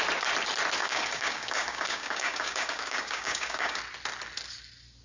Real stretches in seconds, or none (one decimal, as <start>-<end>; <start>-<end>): 0.0-0.8; 3.8-5.0